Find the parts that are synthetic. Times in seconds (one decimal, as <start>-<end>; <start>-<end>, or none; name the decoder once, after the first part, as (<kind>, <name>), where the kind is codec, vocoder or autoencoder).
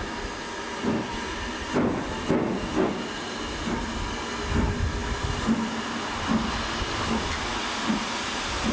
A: none